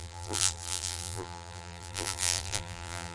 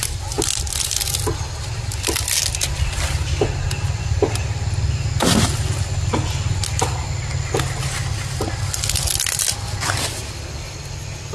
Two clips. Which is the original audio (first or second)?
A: second